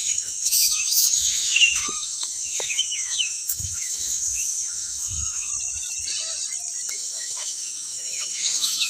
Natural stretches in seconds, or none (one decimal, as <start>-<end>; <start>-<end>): 5.5-6.9